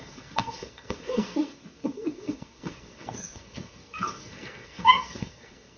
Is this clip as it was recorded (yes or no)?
no